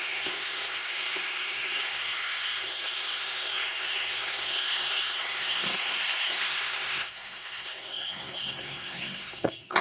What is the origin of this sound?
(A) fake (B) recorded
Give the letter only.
A